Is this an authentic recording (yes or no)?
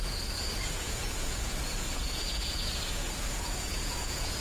no